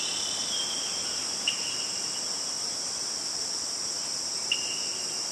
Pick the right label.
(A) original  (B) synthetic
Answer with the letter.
A